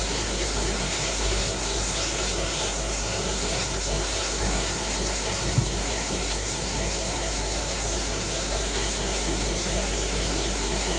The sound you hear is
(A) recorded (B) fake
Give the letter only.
B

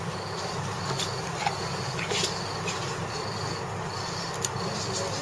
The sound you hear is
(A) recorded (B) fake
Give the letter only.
A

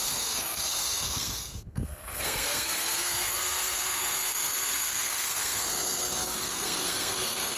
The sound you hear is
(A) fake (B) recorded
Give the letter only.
A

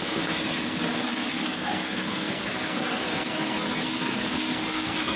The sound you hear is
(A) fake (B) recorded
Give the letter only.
A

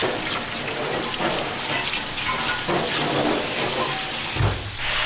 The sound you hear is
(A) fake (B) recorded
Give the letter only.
B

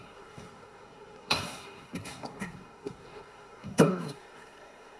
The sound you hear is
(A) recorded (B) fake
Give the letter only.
B